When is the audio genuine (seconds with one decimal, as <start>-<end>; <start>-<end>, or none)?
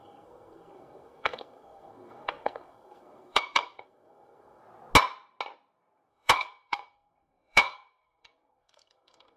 4.6-6.1